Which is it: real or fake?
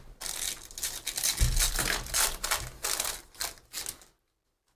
real